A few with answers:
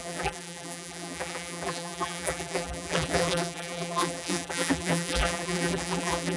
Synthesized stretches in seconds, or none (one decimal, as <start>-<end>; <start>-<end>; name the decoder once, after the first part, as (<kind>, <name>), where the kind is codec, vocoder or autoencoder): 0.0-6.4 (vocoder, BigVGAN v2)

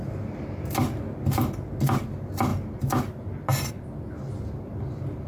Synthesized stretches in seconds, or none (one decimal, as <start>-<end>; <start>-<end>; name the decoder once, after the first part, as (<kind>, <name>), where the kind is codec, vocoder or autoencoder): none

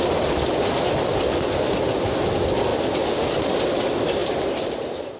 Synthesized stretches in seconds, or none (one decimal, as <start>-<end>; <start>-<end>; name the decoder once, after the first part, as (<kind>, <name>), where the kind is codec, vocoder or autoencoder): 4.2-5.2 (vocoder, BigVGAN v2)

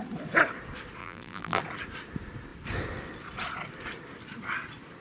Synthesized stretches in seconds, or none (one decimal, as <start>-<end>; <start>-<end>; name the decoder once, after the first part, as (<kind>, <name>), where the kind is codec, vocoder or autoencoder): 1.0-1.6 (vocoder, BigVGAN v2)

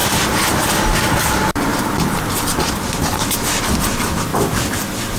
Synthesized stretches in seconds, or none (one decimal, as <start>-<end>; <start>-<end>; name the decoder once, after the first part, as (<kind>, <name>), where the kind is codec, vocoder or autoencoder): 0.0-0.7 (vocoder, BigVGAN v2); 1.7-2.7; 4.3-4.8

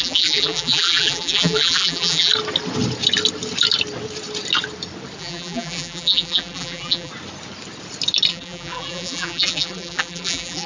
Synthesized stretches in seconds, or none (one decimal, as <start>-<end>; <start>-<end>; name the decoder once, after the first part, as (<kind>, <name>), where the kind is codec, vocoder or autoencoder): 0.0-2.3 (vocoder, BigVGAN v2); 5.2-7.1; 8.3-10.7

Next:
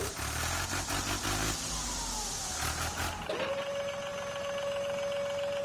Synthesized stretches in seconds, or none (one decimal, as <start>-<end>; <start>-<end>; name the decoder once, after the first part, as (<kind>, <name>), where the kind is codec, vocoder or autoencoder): none

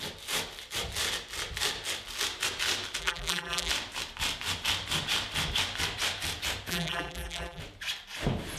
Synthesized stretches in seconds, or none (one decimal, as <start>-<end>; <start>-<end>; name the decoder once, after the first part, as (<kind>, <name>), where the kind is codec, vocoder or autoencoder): 3.0-3.7 (vocoder, BigVGAN v2); 6.7-7.6